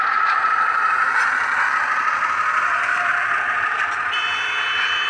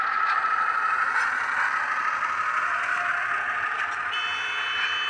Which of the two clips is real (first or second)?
second